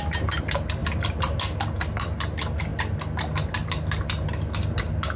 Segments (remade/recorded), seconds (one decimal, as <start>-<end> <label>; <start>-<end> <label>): 0.0-5.2 recorded